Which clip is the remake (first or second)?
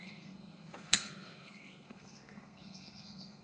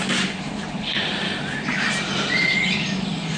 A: first